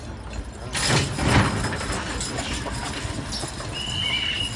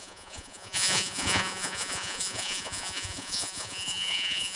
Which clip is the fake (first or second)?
second